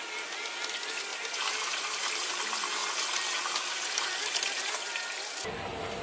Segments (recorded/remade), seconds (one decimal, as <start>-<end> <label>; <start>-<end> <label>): 0.0-6.0 recorded